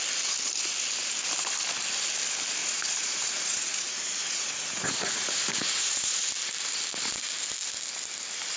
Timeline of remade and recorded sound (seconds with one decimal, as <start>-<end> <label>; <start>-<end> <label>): 0.0-2.6 recorded; 2.6-6.3 remade; 6.3-8.6 recorded